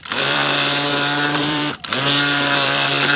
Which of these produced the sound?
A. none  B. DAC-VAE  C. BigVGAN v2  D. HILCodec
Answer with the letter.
C